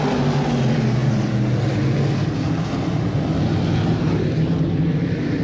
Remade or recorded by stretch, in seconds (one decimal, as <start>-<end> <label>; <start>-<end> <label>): 0.0-5.4 recorded